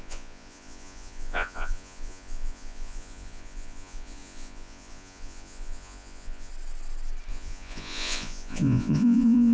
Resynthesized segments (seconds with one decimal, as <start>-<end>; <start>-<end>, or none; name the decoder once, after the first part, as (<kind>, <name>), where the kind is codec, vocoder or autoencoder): 0.0-6.5 (vocoder, Vocos); 7.3-9.5